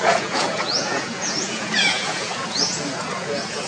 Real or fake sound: fake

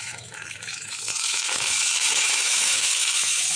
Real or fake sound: fake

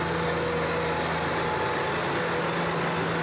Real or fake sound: real